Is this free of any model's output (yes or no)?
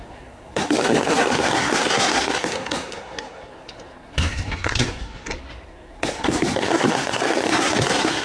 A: no